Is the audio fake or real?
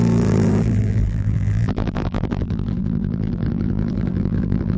fake